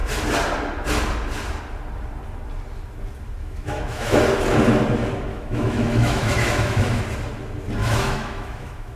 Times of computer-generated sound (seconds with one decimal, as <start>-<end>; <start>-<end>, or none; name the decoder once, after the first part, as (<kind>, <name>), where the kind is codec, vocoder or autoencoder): 3.4-4.2 (autoencoder, DAC-VAE); 5.3-7.0; 7.8-9.0